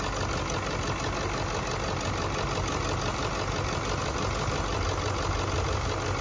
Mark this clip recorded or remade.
recorded